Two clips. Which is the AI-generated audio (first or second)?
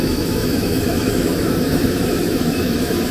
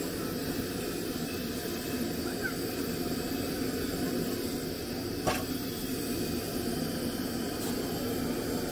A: first